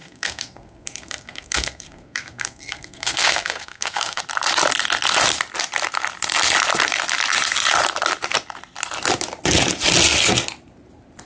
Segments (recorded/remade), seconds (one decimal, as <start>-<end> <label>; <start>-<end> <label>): 0.0-4.2 remade; 4.2-11.3 recorded

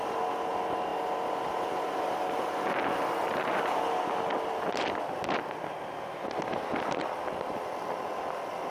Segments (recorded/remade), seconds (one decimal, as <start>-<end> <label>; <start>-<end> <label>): 0.0-8.7 recorded